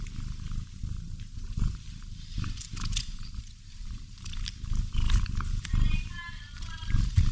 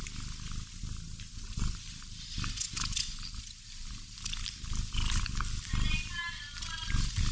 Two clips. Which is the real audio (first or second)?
second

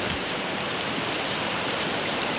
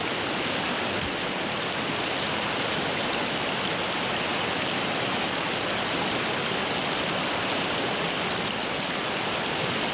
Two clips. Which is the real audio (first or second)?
second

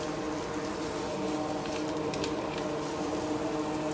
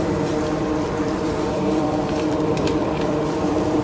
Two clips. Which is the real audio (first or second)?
first